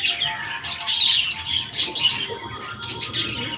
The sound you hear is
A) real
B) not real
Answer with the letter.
A